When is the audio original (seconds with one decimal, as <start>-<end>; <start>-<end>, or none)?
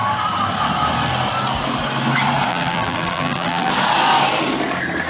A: 0.0-2.5; 3.7-5.1